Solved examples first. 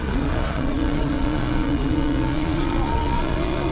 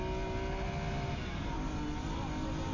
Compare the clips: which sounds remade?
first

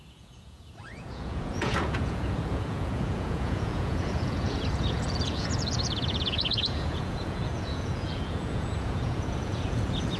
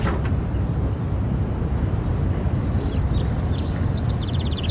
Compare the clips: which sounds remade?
first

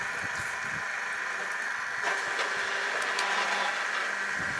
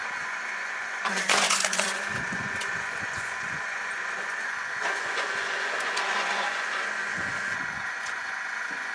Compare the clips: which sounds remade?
second